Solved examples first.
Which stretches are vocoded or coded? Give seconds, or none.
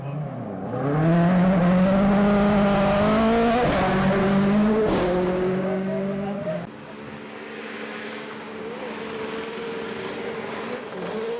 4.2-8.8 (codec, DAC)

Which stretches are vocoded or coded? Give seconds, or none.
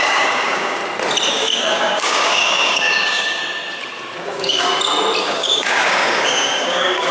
0.0-0.8 (codec, DAC); 1.3-3.4; 4.2-4.7; 5.2-7.1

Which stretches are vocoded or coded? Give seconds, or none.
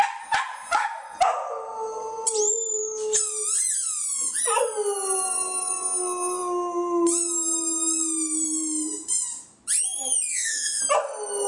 10.3-10.8 (codec, DAC)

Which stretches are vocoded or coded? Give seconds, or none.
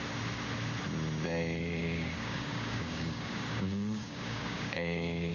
1.8-5.3 (codec, DAC)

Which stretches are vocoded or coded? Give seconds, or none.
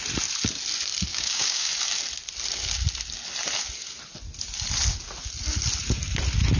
1.1-1.7 (codec, DAC)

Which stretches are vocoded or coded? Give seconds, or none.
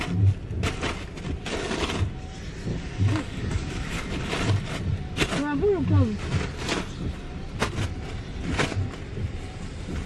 2.7-4.0 (codec, DAC)